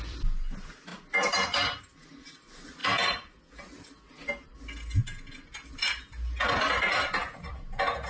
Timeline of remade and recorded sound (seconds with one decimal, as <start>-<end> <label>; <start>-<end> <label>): 0.0-8.1 recorded